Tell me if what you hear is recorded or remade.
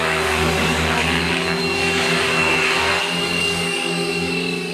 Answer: remade